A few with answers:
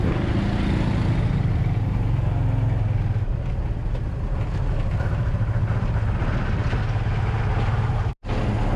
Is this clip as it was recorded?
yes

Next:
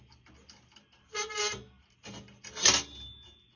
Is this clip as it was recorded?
yes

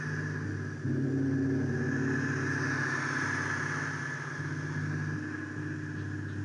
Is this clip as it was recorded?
yes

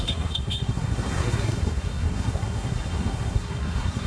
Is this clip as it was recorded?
no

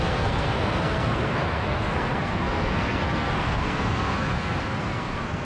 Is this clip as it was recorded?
no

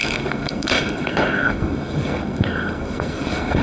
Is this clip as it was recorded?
no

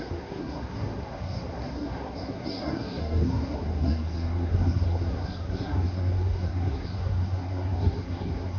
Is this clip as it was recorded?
no